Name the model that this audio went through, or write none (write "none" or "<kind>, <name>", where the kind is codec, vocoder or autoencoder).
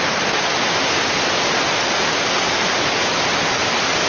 none